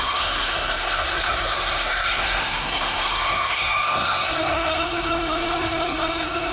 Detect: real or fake fake